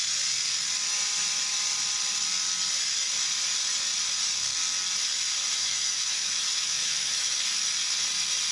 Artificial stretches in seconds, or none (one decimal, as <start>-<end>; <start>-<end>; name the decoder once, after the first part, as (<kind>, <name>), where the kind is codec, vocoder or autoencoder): 5.6-7.4 (autoencoder, DAC-VAE)